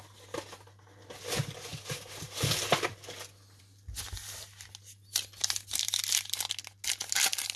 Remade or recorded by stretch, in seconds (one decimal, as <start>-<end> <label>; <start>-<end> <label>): 0.0-7.6 recorded